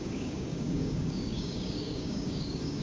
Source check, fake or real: fake